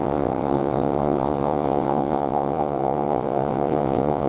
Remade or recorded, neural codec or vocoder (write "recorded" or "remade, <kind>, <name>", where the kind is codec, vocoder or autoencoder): remade, vocoder, WaveNeXt